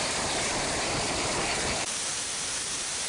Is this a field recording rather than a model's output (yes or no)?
no